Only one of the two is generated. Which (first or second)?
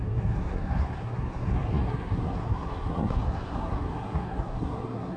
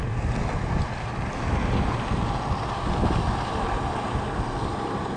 first